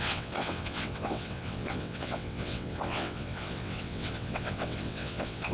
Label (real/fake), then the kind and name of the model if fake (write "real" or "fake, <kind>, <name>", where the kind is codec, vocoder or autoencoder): fake, vocoder, WaveNeXt